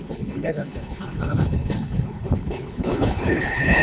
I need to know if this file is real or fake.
fake